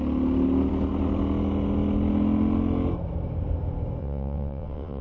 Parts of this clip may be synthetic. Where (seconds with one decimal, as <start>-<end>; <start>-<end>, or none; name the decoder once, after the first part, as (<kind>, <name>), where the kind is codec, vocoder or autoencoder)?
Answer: 4.0-5.0 (vocoder, WaveNeXt)